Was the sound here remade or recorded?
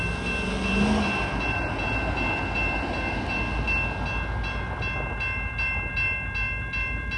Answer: recorded